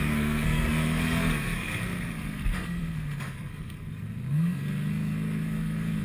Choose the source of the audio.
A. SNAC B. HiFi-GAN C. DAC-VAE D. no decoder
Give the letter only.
A